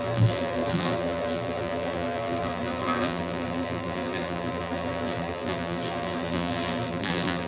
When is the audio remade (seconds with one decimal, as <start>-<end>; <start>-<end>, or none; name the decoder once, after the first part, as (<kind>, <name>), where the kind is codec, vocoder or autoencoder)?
0.0-7.5 (vocoder, BigVGAN v2)